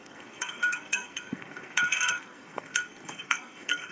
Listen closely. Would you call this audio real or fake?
fake